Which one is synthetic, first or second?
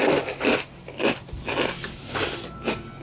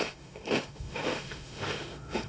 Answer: second